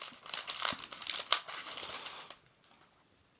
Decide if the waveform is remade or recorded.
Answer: recorded